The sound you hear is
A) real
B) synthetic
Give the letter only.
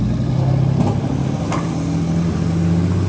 A